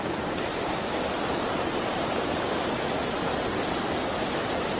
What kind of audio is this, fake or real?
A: real